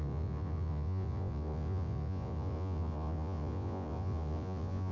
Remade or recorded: remade